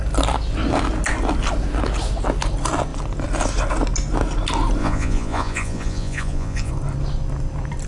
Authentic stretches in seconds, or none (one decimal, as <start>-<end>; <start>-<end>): 0.0-4.8; 6.7-7.9